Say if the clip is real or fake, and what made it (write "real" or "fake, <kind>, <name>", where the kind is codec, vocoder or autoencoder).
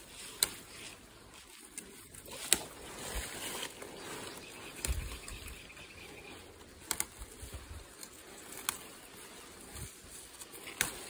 real